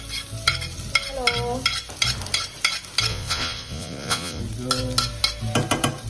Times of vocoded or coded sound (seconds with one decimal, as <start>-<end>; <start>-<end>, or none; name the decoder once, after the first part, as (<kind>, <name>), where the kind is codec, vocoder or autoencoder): 3.1-4.4 (vocoder, Vocos)

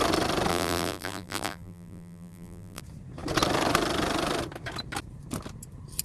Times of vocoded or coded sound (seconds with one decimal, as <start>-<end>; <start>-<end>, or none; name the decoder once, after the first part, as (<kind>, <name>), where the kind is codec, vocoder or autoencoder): 0.5-2.8 (vocoder, BigVGAN v2)

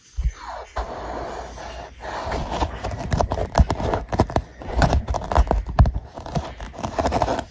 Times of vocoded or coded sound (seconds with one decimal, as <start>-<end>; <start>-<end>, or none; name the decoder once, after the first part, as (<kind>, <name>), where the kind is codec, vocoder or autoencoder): 4.5-5.0 (vocoder, Vocos)

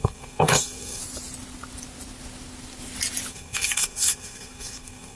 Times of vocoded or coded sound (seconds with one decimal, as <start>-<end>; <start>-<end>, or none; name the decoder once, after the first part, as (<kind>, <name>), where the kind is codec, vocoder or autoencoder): 0.0-1.0 (codec, SNAC); 3.3-5.2

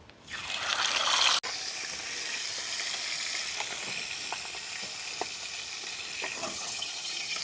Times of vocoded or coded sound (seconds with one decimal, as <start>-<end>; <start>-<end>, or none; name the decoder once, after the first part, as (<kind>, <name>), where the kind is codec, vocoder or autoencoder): 6.4-7.4 (vocoder, HiFi-GAN)

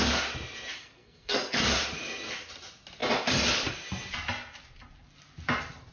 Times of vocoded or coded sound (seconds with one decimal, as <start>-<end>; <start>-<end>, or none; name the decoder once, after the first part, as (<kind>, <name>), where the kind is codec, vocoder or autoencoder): 0.8-1.6 (codec, SNAC)